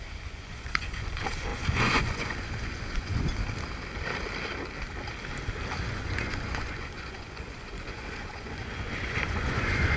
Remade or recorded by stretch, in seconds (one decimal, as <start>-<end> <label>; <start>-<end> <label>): 0.0-3.3 remade; 3.3-5.8 recorded; 5.8-10.0 remade